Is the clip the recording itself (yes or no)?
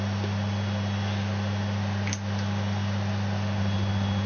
yes